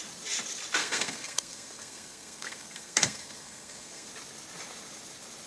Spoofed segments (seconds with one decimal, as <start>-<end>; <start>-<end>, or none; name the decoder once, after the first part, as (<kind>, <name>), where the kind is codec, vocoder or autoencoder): 0.8-4.1 (codec, SNAC)